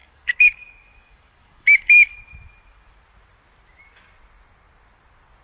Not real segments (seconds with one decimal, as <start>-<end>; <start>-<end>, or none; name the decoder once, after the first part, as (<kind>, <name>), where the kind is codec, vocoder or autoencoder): 0.0-2.1 (codec, DAC)